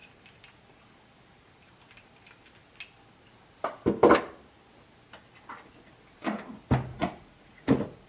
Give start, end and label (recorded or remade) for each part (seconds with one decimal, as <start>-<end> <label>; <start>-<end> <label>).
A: 0.0-6.9 recorded; 6.9-8.1 remade